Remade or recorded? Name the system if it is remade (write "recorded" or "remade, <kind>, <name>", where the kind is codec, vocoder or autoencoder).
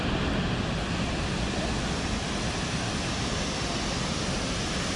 recorded